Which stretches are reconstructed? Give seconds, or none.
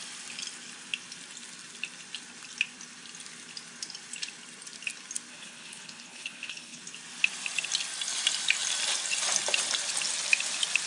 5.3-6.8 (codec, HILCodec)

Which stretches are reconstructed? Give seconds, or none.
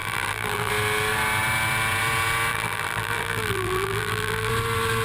0.0-0.7 (vocoder, BigVGAN v2); 2.5-4.5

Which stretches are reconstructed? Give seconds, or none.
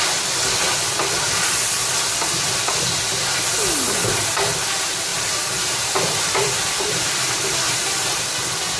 5.1-8.4 (vocoder, BigVGAN v2)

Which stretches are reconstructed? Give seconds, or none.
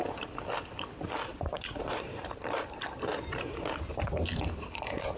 1.3-4.4 (vocoder, BigVGAN v2)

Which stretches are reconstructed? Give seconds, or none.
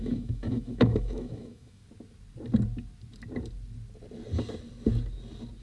0.0-1.8 (autoencoder, DAC-VAE)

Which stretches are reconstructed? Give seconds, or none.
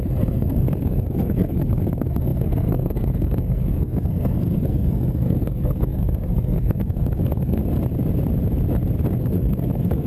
0.0-7.6 (codec, SNAC); 9.2-10.1